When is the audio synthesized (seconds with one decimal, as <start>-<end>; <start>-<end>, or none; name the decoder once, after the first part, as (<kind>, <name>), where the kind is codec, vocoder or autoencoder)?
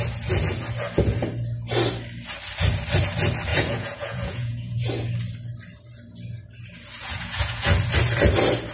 3.5-4.9 (vocoder, Vocos); 7.0-7.7